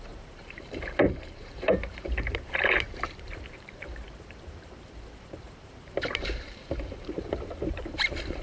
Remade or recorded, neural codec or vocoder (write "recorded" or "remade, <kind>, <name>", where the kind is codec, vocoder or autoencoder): remade, vocoder, BigVGAN v2